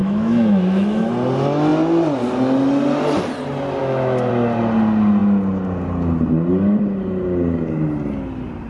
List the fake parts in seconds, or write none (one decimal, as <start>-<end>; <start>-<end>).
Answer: 0.0-1.1; 3.8-4.3